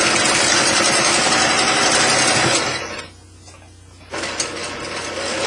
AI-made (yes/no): no